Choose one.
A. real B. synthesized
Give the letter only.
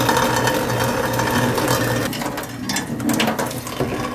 A